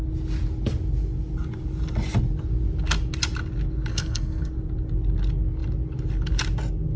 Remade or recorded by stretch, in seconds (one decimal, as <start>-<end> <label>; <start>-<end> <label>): 0.0-3.9 recorded; 3.9-4.5 remade; 4.5-7.0 recorded